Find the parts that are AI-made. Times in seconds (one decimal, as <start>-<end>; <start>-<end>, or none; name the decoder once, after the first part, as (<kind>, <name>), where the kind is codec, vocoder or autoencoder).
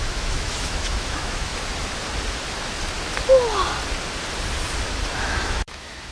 0.0-1.5 (autoencoder, DAC-VAE); 5.2-6.1